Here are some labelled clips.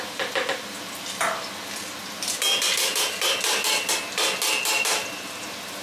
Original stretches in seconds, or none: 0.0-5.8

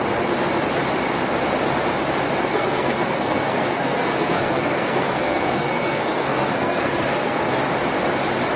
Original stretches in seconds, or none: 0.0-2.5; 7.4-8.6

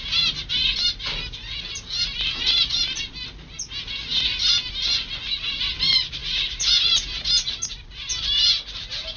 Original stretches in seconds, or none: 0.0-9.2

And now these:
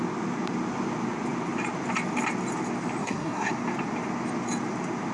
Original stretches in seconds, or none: 0.0-3.0; 3.5-5.1

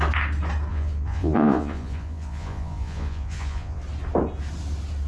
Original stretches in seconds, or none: 0.0-0.7; 3.8-5.1

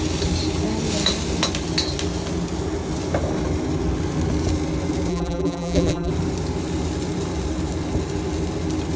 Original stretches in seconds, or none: 0.0-5.1; 6.1-9.0

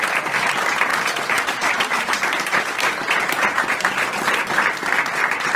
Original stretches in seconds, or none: 0.0-0.9; 3.7-5.6

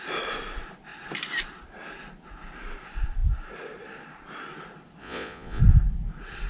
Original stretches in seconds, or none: 0.0-5.0; 5.6-6.5